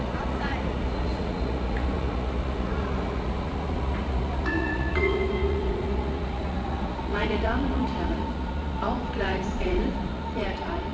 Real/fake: fake